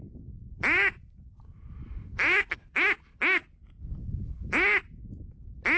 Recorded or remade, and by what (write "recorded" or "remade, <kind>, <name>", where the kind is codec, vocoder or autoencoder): recorded